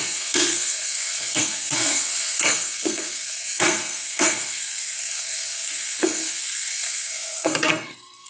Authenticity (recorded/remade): remade